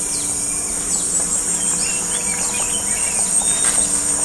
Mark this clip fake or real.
real